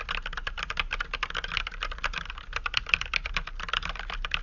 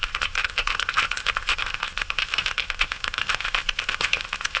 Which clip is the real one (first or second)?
first